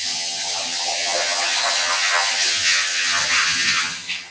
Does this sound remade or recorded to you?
remade